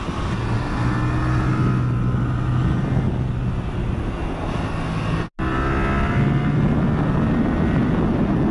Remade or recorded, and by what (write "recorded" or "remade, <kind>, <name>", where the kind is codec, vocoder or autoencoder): recorded